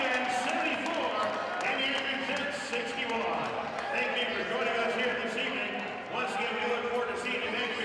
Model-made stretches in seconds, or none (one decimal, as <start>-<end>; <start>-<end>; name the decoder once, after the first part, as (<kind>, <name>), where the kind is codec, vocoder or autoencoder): none